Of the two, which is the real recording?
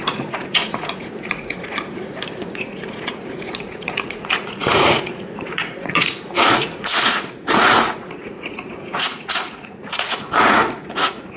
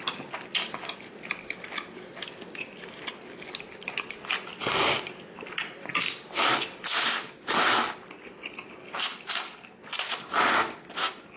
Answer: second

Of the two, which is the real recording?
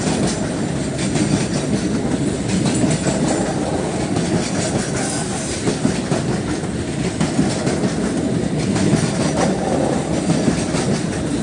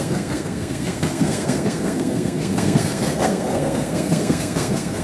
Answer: first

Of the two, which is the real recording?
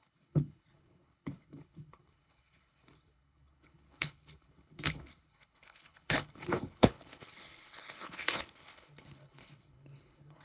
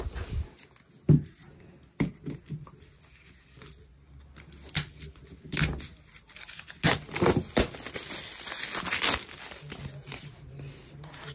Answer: second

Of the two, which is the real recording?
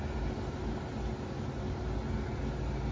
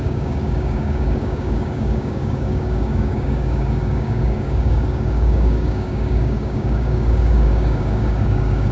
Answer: first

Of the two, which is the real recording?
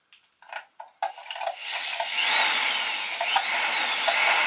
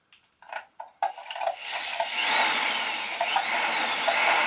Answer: first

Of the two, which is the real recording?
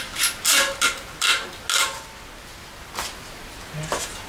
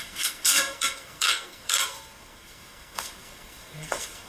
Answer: first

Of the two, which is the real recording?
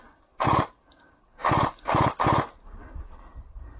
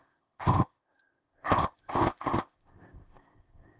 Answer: first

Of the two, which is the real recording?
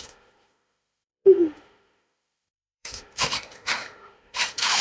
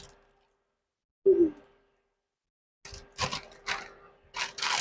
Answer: second